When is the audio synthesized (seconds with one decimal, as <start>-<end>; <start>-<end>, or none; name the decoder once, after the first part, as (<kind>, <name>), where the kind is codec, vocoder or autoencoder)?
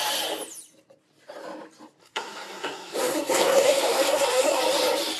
2.0-4.6 (codec, SNAC)